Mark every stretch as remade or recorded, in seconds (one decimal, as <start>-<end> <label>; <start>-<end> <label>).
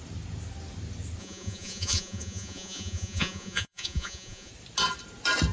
0.0-1.2 recorded; 1.2-4.5 remade; 4.5-5.5 recorded